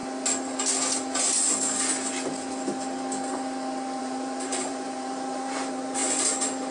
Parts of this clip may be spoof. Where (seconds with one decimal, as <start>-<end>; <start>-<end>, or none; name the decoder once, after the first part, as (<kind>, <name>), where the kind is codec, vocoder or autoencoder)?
4.0-6.0 (vocoder, BigVGAN v2)